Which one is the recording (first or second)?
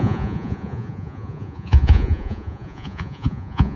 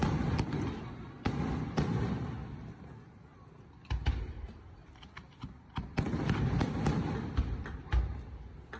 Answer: second